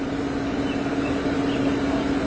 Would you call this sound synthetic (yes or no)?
no